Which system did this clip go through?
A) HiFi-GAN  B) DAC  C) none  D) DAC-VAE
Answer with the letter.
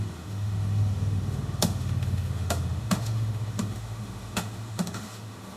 D